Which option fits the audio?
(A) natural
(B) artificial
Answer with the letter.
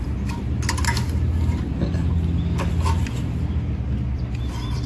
A